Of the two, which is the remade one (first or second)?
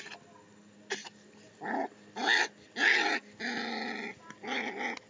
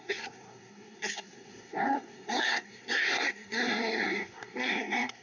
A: second